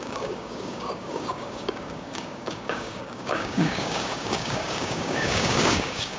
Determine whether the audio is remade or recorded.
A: remade